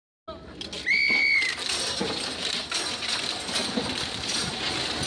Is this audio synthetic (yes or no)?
no